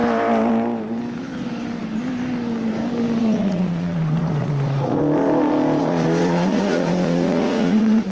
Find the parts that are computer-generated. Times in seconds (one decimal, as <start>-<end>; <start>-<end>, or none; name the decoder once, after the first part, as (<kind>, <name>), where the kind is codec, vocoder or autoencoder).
3.2-5.0 (vocoder, Vocos); 5.8-8.1